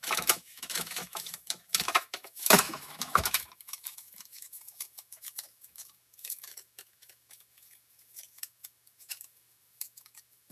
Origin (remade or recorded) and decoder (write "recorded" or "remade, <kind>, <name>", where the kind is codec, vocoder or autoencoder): remade, autoencoder, DAC-VAE